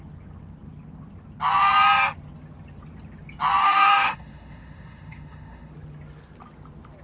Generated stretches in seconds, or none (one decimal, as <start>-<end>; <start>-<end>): 3.6-5.7